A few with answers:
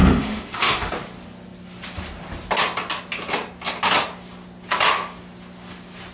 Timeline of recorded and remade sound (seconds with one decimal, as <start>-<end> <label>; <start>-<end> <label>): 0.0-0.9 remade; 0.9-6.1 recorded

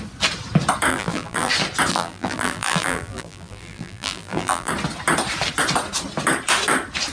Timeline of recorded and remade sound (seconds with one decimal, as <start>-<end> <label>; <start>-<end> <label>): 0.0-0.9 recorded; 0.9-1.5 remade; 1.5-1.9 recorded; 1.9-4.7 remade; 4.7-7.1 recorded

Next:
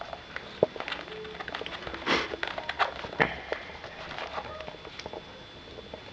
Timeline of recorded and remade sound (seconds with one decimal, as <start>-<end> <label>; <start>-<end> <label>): 0.0-3.5 recorded; 3.5-4.2 remade; 4.2-6.1 recorded

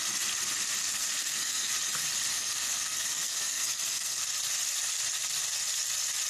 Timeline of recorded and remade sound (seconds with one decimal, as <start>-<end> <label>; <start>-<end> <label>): 0.0-0.8 recorded; 0.8-1.7 remade; 1.7-2.3 recorded; 2.3-4.2 remade; 4.2-6.3 recorded